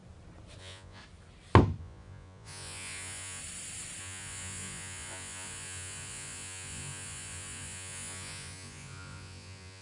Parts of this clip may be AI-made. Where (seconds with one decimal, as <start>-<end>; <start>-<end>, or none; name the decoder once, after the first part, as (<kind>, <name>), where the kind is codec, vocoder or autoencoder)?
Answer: 0.6-1.0 (vocoder, Vocos); 1.8-3.4; 4.0-9.8